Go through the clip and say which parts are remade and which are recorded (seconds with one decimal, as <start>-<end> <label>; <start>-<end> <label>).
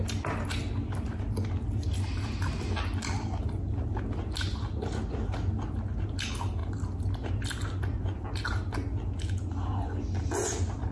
0.0-10.9 recorded